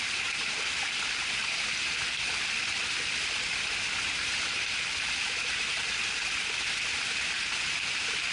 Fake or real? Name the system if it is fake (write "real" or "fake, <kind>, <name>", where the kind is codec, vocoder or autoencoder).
real